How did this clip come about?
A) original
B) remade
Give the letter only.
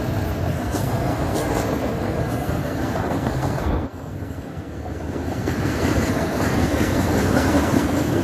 B